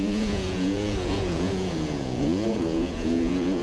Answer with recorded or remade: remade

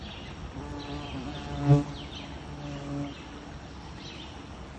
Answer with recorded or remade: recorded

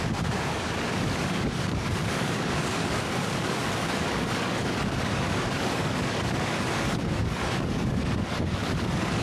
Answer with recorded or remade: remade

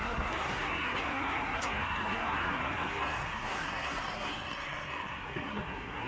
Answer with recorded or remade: remade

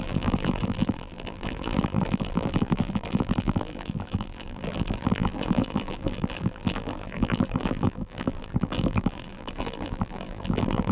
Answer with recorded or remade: remade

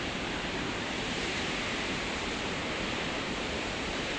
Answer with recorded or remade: remade